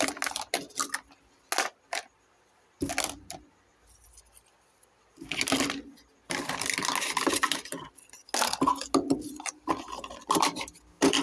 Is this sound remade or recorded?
recorded